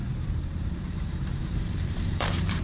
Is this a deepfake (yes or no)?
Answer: yes